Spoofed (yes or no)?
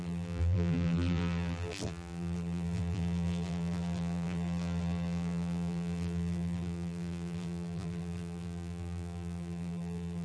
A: yes